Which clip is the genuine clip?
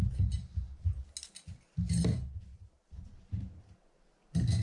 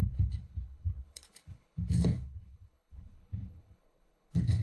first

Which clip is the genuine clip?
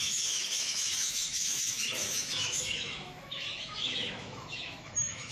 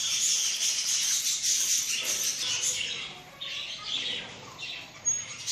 second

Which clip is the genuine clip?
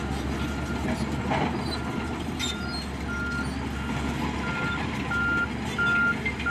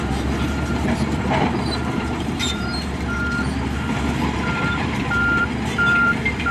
first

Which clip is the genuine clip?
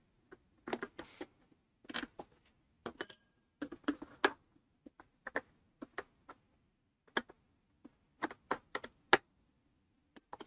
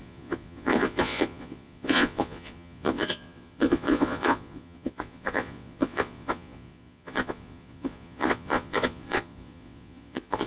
first